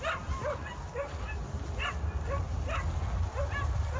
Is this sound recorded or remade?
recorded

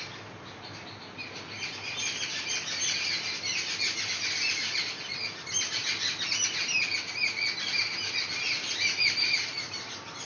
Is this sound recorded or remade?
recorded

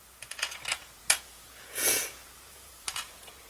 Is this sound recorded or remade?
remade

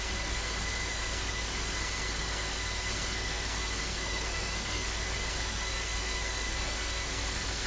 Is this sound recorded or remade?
remade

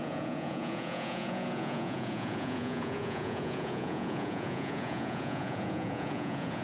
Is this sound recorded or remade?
remade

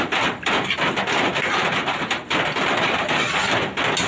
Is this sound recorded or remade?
recorded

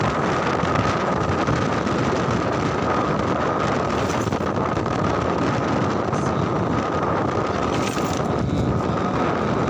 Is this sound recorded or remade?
recorded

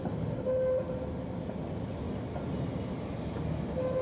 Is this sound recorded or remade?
recorded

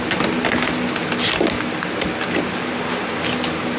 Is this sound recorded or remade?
recorded